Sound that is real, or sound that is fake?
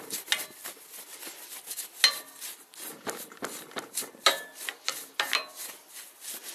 real